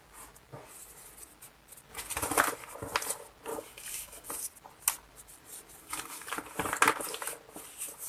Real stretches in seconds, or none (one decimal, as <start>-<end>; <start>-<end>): 0.0-3.5; 4.3-5.8; 6.3-8.1